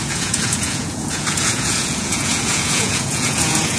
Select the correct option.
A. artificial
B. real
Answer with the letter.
A